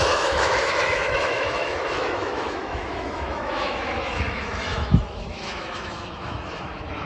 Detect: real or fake fake